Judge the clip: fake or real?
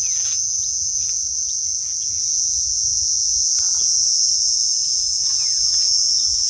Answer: fake